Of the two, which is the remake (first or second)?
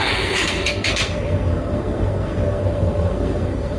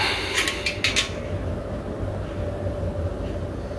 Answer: first